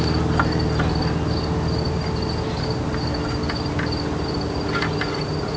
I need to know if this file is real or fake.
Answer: real